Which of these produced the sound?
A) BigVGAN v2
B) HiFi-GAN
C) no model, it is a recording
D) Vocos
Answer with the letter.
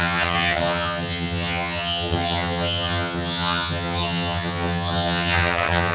B